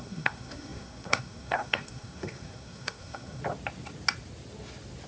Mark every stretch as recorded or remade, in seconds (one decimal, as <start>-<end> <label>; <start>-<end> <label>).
0.0-3.4 remade; 3.4-5.1 recorded